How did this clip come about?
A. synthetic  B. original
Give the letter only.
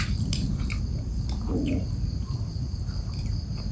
A